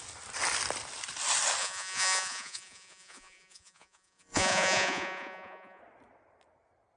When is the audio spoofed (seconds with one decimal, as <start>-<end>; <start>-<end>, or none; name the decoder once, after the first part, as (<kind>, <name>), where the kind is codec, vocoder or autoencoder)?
1.6-5.8 (vocoder, Vocos)